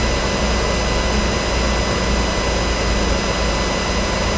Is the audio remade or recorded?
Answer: recorded